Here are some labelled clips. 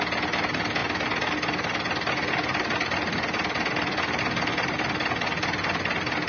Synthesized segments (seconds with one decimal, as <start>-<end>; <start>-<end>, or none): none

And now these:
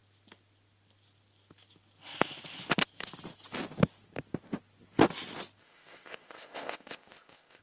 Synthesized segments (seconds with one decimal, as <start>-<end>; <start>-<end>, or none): 5.6-7.6

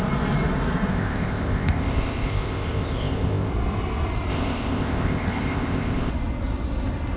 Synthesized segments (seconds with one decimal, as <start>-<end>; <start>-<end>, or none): 0.9-3.5; 4.3-6.1